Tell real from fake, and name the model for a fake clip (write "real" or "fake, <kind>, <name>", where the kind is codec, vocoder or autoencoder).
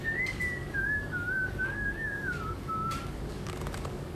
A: fake, codec, DAC